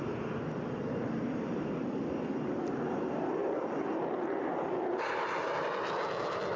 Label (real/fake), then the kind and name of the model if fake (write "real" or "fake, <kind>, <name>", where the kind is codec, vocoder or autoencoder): real